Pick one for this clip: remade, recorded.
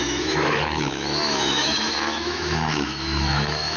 remade